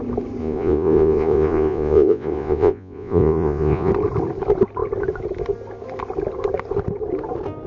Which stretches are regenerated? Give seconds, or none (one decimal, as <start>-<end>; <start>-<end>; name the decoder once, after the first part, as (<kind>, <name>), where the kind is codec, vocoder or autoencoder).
0.4-3.9 (vocoder, Vocos)